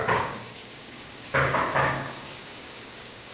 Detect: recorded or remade remade